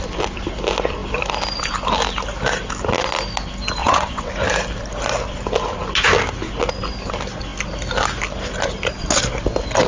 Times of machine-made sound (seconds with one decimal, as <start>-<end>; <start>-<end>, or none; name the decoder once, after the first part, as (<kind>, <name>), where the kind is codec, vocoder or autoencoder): 3.8-4.3 (vocoder, WaveNeXt)